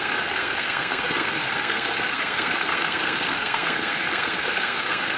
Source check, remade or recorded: remade